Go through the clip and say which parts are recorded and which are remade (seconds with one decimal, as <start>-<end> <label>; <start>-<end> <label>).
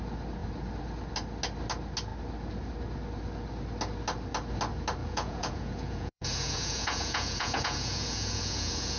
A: 0.0-5.0 recorded; 5.0-9.0 remade